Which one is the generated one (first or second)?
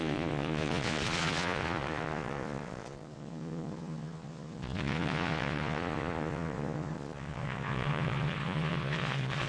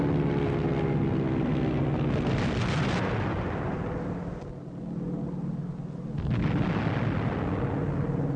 first